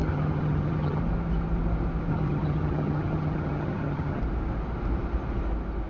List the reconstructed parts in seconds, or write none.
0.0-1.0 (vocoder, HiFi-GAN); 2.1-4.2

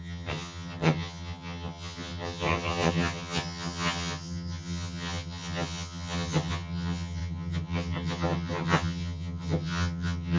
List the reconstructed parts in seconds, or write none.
0.0-10.4 (vocoder, HiFi-GAN)

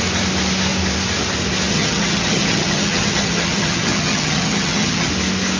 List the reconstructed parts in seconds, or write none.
1.7-5.1 (vocoder, HiFi-GAN)

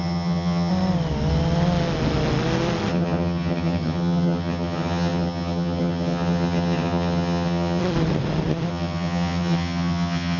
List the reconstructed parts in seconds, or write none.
0.0-0.7 (vocoder, HiFi-GAN); 2.9-7.8; 8.7-10.4

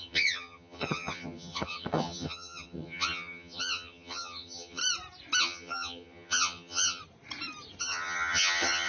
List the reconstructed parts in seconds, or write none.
0.0-4.8 (vocoder, HiFi-GAN); 5.4-7.0; 7.8-8.9

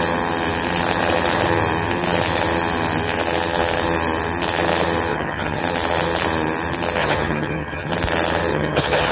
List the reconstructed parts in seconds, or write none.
5.1-5.6 (vocoder, HiFi-GAN); 7.0-7.9; 8.5-9.1

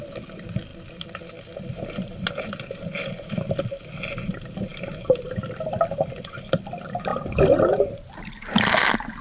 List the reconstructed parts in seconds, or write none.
none